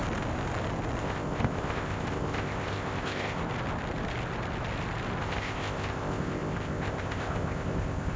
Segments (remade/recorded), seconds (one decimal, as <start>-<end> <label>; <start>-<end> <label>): 0.0-1.0 recorded; 1.0-3.4 remade; 3.4-5.2 recorded; 5.2-8.2 remade